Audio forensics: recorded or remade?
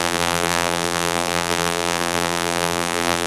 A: remade